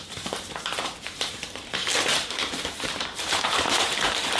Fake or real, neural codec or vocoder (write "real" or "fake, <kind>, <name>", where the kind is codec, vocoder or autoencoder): fake, vocoder, BigVGAN v2